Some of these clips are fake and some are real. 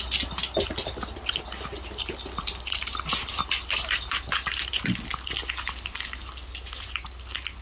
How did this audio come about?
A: real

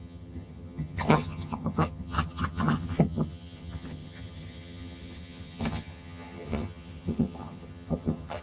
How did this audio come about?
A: fake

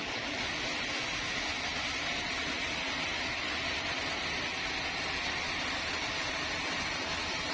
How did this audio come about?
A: real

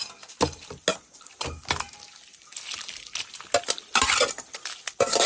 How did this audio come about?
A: real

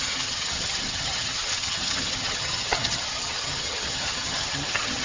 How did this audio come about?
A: fake